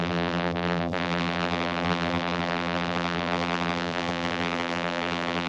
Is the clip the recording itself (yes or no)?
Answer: no